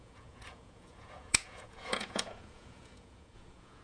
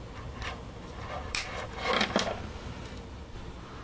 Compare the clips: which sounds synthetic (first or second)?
first